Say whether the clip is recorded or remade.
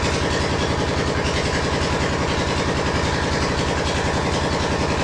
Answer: recorded